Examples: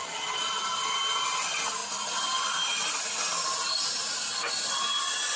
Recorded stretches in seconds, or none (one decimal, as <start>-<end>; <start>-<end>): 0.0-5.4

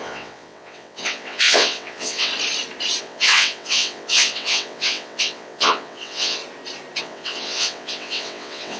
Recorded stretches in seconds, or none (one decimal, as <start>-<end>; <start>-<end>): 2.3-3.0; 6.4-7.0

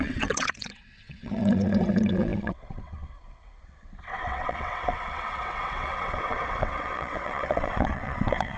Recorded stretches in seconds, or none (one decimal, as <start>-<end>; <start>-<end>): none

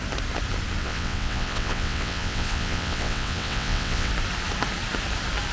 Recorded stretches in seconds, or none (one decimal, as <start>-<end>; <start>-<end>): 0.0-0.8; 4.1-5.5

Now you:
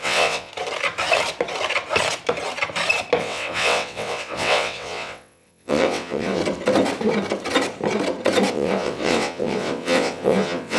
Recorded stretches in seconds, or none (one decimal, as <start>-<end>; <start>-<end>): 0.5-3.2; 6.4-8.5

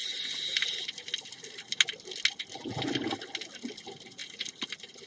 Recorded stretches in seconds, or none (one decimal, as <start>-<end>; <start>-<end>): 0.0-5.1

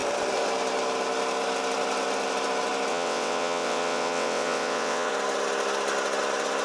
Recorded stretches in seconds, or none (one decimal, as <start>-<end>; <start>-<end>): 0.0-2.9; 5.1-6.6